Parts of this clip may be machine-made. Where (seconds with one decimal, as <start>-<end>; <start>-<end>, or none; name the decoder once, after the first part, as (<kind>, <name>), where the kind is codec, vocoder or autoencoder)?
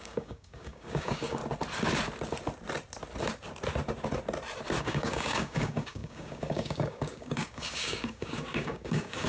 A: 0.0-1.4 (codec, DAC); 4.8-9.3